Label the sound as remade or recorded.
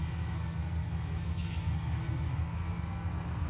remade